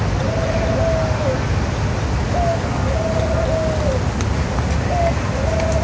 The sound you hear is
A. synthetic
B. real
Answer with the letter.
B